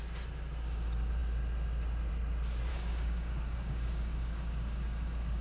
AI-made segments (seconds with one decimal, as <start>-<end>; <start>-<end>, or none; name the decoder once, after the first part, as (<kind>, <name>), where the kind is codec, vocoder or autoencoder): 2.7-5.4 (codec, DAC)